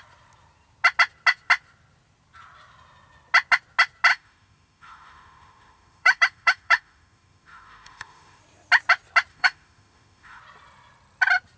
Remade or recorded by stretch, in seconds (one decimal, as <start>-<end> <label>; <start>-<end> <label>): 0.0-4.1 recorded; 4.1-8.4 remade; 8.4-9.3 recorded; 9.3-10.4 remade; 10.4-11.6 recorded